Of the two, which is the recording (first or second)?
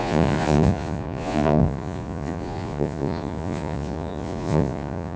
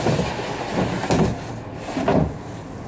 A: second